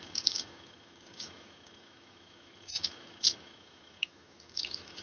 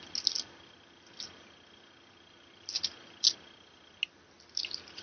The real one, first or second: second